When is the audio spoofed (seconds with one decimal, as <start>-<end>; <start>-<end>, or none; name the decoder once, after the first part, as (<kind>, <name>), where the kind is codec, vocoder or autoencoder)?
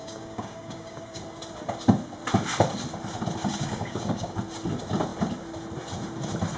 0.0-1.2 (codec, DAC); 3.4-4.4